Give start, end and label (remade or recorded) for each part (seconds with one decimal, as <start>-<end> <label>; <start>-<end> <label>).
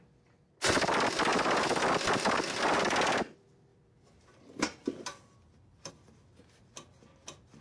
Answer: 0.0-3.7 recorded; 3.7-5.9 remade; 5.9-7.6 recorded